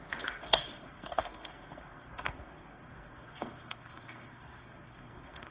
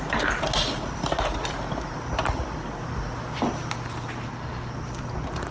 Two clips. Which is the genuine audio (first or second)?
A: second